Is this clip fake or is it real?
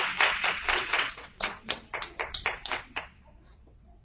fake